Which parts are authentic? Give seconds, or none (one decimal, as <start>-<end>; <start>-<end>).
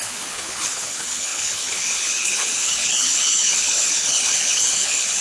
none